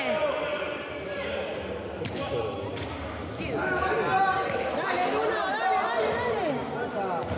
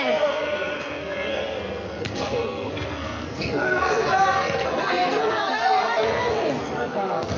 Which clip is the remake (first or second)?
second